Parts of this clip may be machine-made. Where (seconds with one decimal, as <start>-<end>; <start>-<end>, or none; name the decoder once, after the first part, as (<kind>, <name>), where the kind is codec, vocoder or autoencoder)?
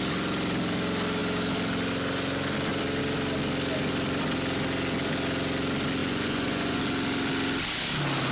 6.0-6.8 (vocoder, Vocos)